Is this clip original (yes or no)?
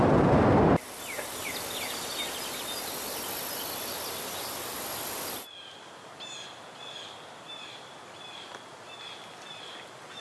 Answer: yes